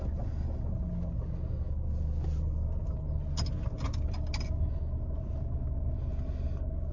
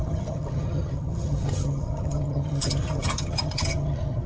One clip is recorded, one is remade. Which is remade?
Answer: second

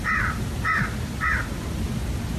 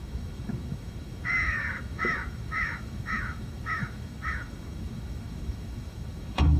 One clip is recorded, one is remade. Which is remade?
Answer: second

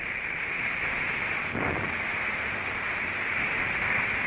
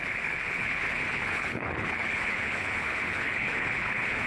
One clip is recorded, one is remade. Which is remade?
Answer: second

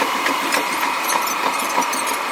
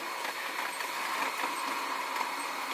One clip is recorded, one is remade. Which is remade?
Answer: first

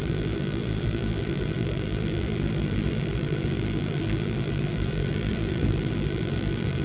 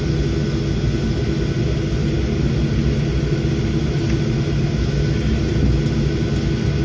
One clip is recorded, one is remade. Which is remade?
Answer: first